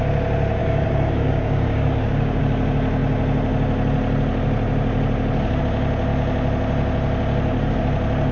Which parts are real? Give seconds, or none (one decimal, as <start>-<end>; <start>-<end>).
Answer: 0.0-0.6; 2.4-8.3